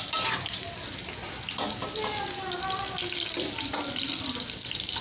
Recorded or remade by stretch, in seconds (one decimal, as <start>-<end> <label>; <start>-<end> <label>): 0.0-5.0 recorded